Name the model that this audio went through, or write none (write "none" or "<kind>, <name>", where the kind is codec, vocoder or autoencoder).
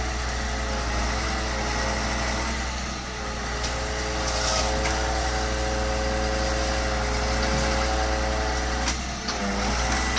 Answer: none